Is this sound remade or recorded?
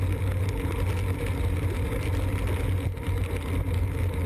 recorded